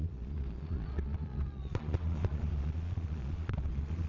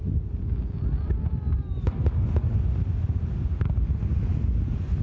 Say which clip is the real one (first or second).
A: second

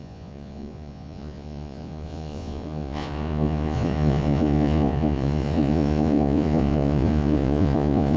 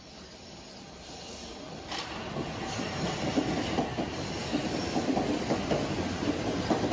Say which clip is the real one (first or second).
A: second